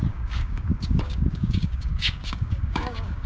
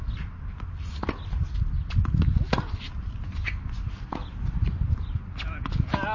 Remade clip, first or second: first